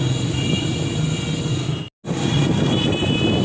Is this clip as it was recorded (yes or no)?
yes